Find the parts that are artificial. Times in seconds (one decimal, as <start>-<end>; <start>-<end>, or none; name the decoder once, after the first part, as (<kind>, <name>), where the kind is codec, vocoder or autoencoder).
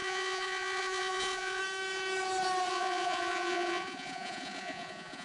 0.0-1.6 (vocoder, Vocos); 2.7-5.2